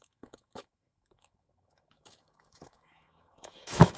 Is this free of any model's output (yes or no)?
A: no